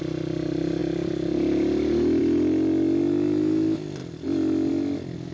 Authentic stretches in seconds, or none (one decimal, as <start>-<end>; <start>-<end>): 0.0-5.3